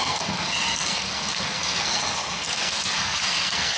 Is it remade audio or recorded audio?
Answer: remade